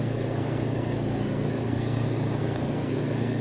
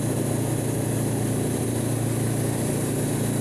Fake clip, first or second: first